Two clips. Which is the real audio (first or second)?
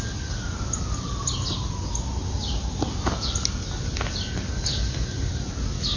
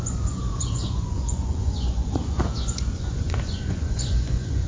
first